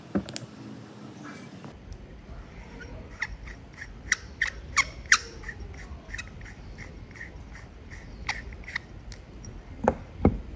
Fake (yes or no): no